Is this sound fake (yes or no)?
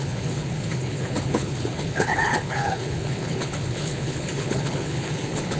yes